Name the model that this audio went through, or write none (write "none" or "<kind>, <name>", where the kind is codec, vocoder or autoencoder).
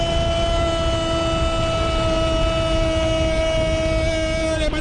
none